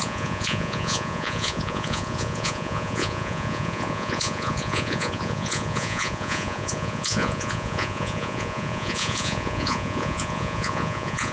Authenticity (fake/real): fake